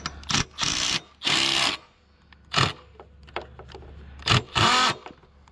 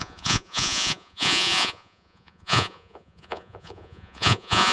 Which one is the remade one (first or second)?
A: second